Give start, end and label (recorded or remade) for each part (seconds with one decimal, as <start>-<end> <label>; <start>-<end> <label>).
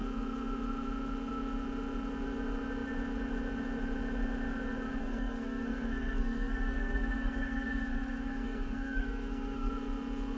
0.0-5.0 recorded; 5.0-9.7 remade; 9.7-10.4 recorded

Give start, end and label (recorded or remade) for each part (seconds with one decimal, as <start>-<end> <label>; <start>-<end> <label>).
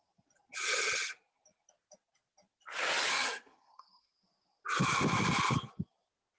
0.0-3.1 recorded; 3.1-4.1 remade; 4.1-6.4 recorded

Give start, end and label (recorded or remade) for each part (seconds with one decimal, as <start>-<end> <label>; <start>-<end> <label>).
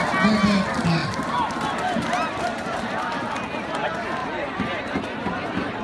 0.0-5.8 recorded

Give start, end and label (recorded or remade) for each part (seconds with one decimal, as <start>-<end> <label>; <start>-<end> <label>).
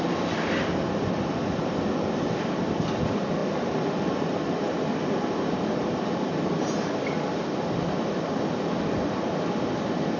0.0-10.2 recorded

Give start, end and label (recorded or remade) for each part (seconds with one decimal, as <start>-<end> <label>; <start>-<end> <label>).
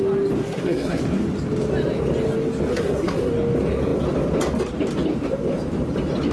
0.0-0.4 recorded; 0.4-1.0 remade; 1.0-2.7 recorded; 2.7-3.3 remade; 3.3-6.3 recorded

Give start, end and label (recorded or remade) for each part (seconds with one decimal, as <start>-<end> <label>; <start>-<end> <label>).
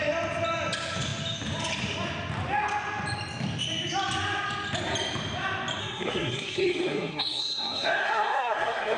0.0-5.8 recorded; 5.8-9.0 remade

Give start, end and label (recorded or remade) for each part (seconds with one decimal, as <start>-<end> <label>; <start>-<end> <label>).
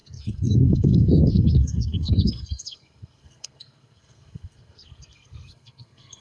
0.0-6.2 remade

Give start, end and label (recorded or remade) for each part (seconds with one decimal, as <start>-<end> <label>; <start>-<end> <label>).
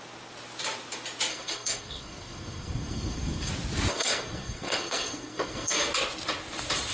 0.0-1.3 recorded; 1.3-3.5 remade; 3.5-3.9 recorded; 3.9-5.9 remade; 5.9-6.9 recorded